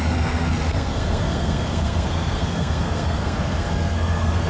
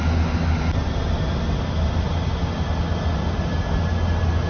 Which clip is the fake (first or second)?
first